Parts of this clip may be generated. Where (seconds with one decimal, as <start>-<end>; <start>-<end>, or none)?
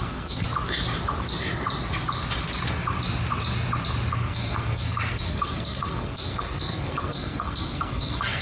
0.0-0.4; 4.1-8.4